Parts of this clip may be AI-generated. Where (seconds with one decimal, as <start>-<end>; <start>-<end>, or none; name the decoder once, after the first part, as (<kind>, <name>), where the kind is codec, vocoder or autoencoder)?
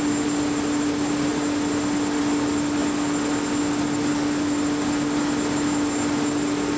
none